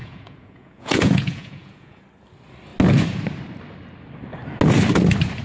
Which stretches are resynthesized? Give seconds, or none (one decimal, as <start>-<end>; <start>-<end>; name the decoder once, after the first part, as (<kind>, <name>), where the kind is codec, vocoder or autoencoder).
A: 0.0-2.0 (vocoder, Vocos)